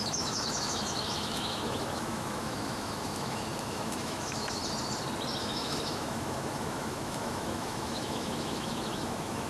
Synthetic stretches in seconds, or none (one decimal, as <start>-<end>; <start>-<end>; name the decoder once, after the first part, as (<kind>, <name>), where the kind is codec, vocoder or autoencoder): 0.0-4.6 (autoencoder, DAC-VAE); 5.4-9.5